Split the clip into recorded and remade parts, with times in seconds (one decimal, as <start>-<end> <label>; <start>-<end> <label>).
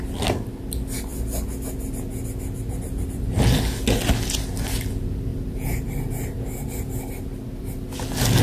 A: 0.0-5.3 recorded; 5.3-6.1 remade; 6.1-8.4 recorded